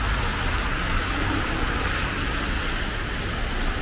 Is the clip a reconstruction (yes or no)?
no